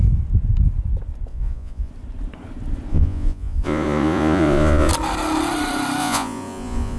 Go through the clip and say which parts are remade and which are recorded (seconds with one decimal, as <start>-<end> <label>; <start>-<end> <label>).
0.0-1.3 recorded; 1.3-1.9 remade; 1.9-2.9 recorded; 2.9-4.9 remade; 4.9-6.0 recorded; 6.0-7.0 remade